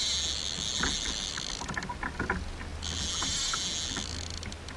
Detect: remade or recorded recorded